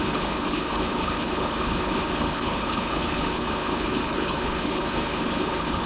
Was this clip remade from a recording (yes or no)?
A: yes